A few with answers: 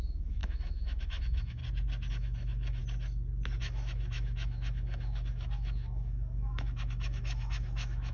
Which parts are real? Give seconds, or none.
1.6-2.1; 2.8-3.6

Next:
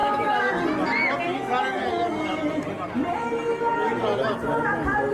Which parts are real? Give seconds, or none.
0.5-5.1

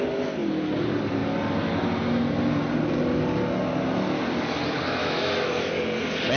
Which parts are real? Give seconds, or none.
0.0-5.0; 5.7-6.4

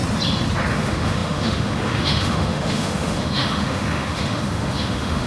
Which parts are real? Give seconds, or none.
0.0-0.7

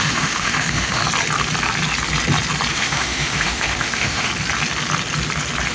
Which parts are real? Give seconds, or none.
1.0-2.7; 4.3-5.7

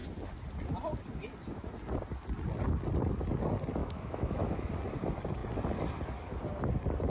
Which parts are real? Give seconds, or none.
0.0-3.8; 4.7-7.1

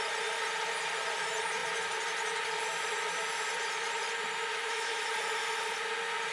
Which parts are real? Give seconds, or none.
0.0-4.5; 5.1-6.3

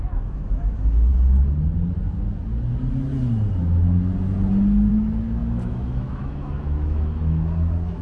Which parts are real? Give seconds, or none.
1.1-4.9